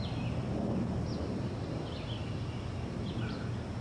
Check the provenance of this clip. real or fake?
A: real